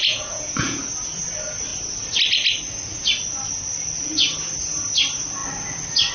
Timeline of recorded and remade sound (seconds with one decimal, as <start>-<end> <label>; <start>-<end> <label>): 0.0-0.8 remade; 0.8-6.1 recorded